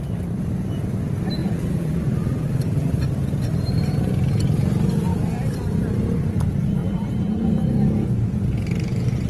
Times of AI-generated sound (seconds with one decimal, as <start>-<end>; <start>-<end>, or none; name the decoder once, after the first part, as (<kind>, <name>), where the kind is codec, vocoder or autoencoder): 1.4-3.0 (vocoder, BigVGAN v2); 6.8-7.5